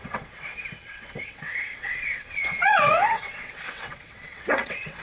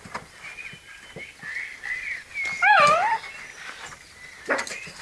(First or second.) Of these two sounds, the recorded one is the second